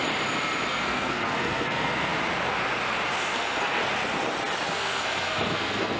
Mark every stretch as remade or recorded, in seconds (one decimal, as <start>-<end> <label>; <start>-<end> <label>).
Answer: 0.0-0.7 recorded; 0.7-2.1 remade; 2.1-3.2 recorded; 3.2-3.8 remade; 3.8-4.7 recorded; 4.7-6.0 remade